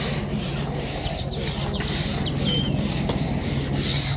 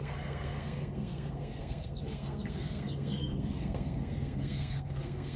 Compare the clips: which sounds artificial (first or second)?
second